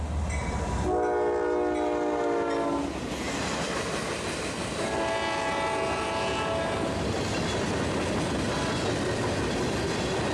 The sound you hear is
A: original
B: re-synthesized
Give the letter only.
A